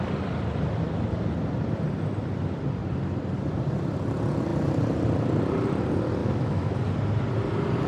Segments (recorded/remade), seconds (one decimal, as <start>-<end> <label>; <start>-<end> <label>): 0.0-6.2 recorded; 6.2-6.7 remade; 6.7-7.9 recorded